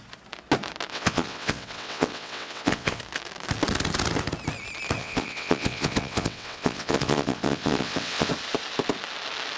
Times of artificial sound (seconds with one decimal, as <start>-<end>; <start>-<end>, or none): 0.9-3.0; 5.0-8.3